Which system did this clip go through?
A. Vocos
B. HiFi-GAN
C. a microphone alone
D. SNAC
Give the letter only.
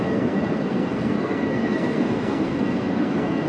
D